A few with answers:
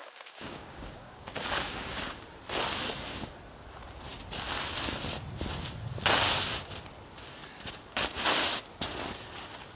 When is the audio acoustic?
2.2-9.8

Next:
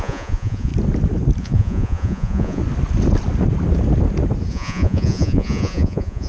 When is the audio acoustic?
0.7-1.4; 2.6-4.5

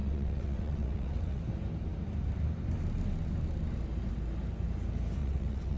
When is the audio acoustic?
1.4-5.2

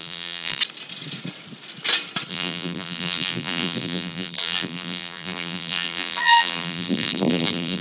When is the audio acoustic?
0.6-2.3

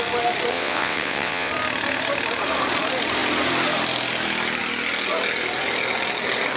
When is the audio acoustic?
0.0-0.5; 1.5-6.6